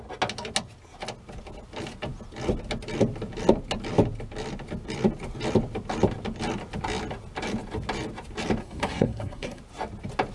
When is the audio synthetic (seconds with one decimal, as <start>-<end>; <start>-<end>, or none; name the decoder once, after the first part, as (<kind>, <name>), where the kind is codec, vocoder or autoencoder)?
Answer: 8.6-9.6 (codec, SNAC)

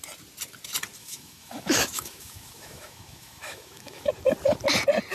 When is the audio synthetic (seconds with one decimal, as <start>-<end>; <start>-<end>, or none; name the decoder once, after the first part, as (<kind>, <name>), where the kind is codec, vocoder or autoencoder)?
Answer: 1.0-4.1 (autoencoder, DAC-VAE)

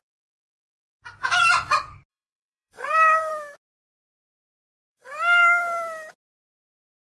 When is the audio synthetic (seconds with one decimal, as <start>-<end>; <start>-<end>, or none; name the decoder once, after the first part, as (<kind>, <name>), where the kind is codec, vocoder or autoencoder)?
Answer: 2.1-3.3 (codec, SNAC); 4.9-5.4